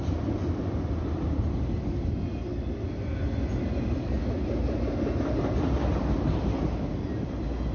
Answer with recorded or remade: recorded